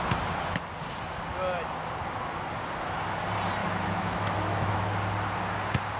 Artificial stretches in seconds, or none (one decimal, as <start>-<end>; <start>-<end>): 3.6-4.8